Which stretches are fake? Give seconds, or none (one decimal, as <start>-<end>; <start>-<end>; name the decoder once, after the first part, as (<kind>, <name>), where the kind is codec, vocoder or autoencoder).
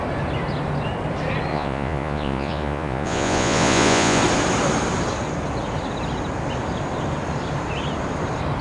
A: 1.5-4.2 (vocoder, Vocos)